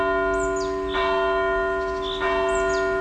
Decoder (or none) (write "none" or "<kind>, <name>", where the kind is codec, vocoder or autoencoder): none